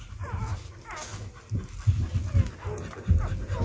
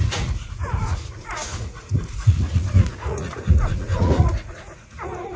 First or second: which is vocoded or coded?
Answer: second